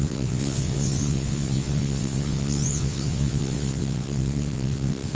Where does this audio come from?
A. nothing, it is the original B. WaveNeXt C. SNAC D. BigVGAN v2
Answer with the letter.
B